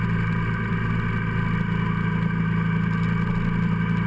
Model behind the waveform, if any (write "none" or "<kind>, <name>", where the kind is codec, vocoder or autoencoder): none